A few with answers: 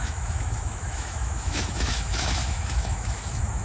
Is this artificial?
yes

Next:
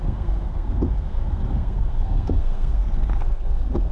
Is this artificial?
yes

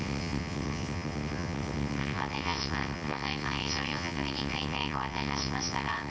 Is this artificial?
yes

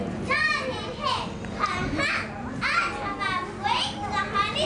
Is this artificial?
no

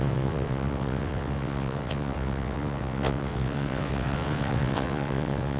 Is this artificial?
yes